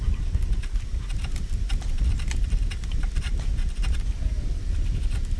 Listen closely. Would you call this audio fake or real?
fake